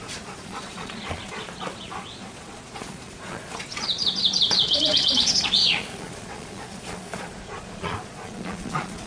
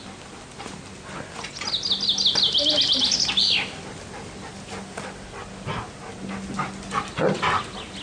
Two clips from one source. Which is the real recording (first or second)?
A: second